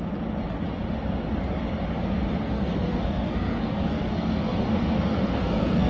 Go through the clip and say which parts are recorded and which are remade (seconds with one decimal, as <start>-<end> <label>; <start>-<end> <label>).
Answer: 0.0-2.4 recorded; 2.4-5.9 remade